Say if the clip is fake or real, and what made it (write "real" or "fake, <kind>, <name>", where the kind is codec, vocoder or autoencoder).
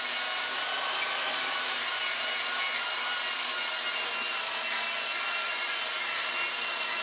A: real